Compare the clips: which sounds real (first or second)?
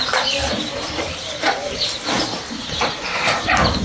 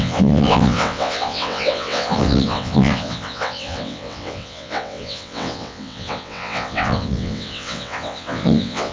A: first